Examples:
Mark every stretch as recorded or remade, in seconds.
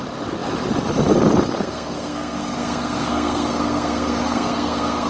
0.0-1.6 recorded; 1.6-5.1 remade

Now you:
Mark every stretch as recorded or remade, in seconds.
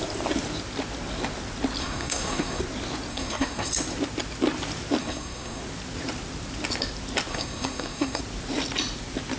0.0-1.8 recorded; 1.8-2.6 remade; 2.6-3.1 recorded; 3.1-3.7 remade; 3.7-5.0 recorded; 5.0-5.6 remade; 5.6-7.3 recorded; 7.3-8.2 remade; 8.2-9.4 recorded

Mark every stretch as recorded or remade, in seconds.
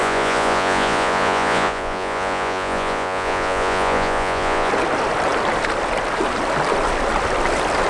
0.0-4.7 remade; 4.7-7.9 recorded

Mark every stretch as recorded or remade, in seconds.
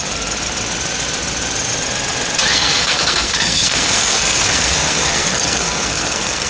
0.0-2.5 recorded; 2.5-6.5 remade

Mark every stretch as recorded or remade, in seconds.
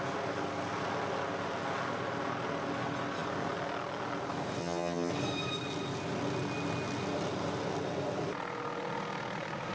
0.0-4.6 recorded; 4.6-5.1 remade; 5.1-9.7 recorded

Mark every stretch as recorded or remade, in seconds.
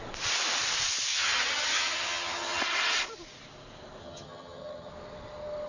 0.0-1.1 recorded; 1.1-2.6 remade; 2.6-4.0 recorded; 4.0-4.9 remade; 4.9-5.7 recorded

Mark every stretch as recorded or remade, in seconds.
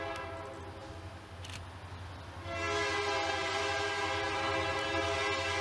0.0-5.6 recorded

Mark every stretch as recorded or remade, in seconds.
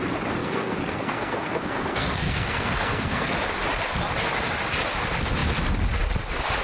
0.0-0.4 recorded; 0.4-3.3 remade; 3.3-6.6 recorded